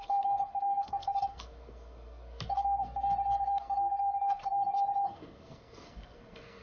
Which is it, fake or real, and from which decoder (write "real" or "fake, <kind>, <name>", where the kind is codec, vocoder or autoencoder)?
fake, codec, SNAC